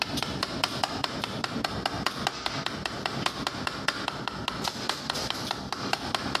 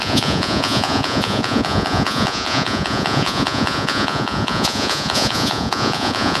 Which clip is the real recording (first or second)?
first